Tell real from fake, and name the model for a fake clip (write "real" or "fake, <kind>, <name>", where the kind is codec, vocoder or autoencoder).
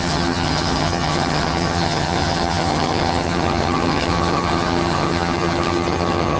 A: fake, vocoder, HiFi-GAN